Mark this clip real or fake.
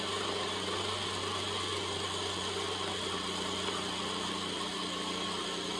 real